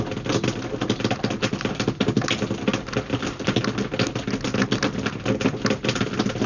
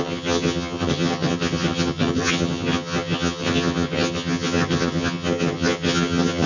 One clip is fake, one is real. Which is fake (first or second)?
second